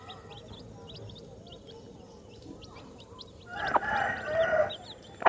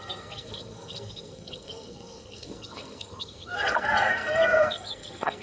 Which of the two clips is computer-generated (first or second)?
second